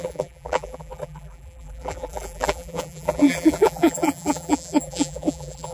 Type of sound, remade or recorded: remade